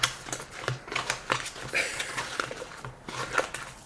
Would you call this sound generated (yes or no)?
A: no